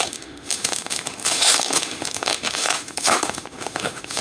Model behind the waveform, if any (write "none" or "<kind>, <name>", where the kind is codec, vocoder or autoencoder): autoencoder, DAC-VAE